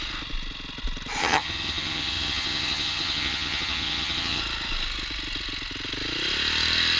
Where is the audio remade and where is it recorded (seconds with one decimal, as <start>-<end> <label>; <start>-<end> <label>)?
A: 0.0-1.2 recorded; 1.2-4.4 remade; 4.4-7.0 recorded